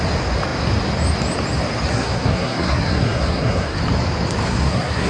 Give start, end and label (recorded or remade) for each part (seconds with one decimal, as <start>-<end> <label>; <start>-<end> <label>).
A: 0.0-1.9 recorded; 1.9-3.8 remade; 3.8-4.5 recorded; 4.5-5.1 remade